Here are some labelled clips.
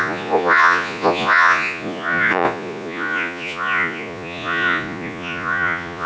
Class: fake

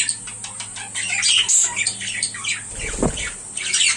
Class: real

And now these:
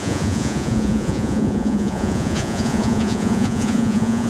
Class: fake